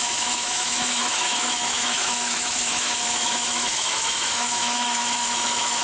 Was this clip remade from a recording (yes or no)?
yes